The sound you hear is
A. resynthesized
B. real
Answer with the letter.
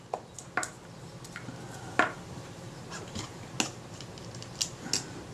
B